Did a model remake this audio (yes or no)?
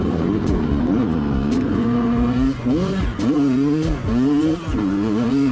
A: yes